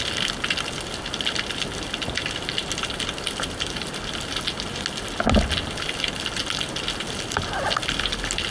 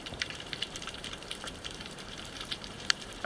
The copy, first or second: second